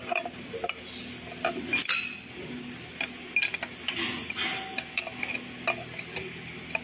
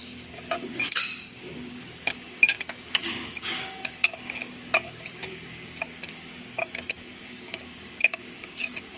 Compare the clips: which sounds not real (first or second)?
second